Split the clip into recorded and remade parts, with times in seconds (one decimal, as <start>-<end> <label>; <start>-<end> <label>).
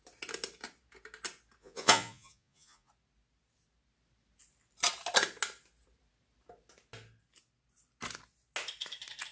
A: 0.0-1.6 recorded; 1.6-2.9 remade; 2.9-9.3 recorded